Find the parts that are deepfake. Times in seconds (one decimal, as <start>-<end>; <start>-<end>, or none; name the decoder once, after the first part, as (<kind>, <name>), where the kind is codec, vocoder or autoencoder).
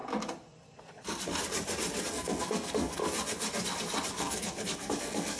2.1-3.0 (codec, SNAC); 4.2-5.4